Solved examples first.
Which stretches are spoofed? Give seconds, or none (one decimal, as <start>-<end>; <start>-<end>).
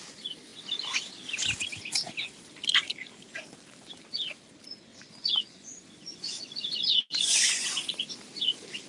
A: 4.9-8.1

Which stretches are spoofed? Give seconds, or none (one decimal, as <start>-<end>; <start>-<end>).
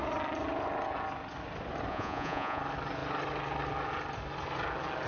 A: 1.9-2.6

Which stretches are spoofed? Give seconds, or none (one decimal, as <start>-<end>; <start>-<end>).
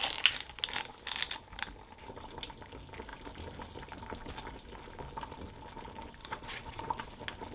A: 6.2-7.1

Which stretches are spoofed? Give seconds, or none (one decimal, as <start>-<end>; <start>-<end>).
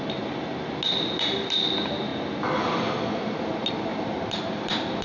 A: none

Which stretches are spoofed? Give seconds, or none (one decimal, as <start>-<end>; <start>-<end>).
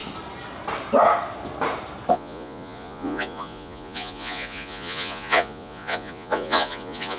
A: 2.1-7.2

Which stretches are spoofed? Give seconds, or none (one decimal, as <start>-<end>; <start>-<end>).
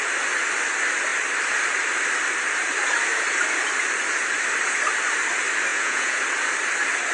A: 5.7-6.2